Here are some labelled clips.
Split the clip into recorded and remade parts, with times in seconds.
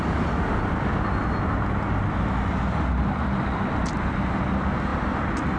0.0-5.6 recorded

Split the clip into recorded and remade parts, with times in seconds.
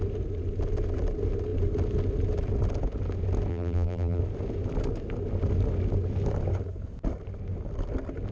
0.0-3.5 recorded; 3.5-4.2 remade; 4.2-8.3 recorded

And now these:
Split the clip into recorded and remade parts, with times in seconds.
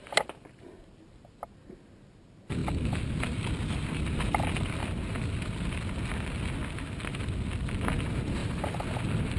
0.0-2.6 recorded; 2.6-4.0 remade; 4.0-8.4 recorded; 8.4-9.4 remade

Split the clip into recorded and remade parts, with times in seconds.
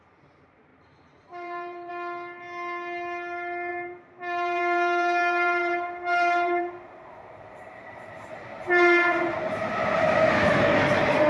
0.0-0.7 recorded; 0.7-1.9 remade; 1.9-3.7 recorded; 3.7-8.3 remade; 8.3-11.3 recorded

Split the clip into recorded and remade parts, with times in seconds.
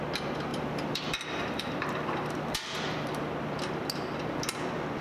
0.0-0.5 recorded; 0.5-3.3 remade; 3.3-5.0 recorded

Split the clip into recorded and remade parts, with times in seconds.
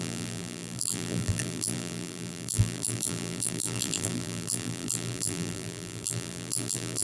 0.0-7.0 remade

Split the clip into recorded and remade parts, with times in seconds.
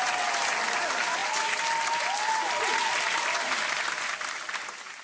0.0-5.0 recorded